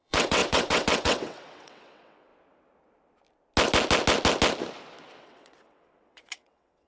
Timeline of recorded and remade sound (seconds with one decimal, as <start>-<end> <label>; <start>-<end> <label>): 0.0-2.3 remade; 2.3-5.2 recorded; 5.2-6.9 remade